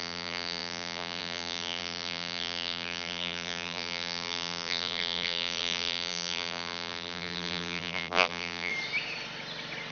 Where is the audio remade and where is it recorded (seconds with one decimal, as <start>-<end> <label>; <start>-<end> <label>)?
0.0-8.7 remade; 8.7-9.9 recorded